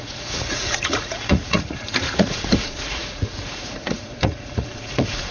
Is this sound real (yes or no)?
no